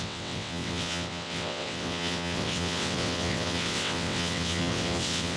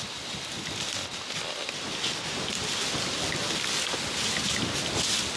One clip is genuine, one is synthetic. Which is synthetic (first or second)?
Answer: first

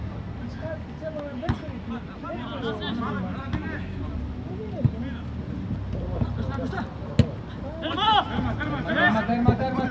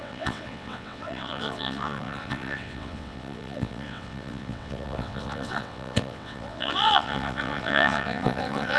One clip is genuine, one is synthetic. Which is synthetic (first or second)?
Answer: second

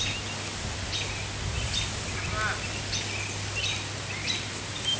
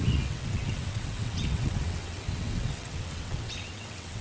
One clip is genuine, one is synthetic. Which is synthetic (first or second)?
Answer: second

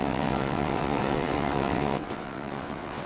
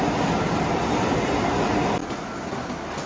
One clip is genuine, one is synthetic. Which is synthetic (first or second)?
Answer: first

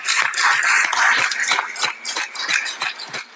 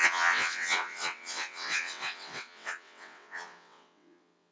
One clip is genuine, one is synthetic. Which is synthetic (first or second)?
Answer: second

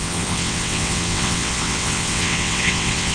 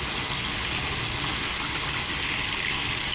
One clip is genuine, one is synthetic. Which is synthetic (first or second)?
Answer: first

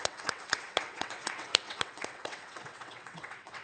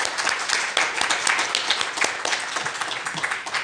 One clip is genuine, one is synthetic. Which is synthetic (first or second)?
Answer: first